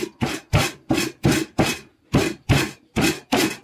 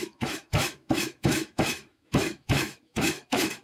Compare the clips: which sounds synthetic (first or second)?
second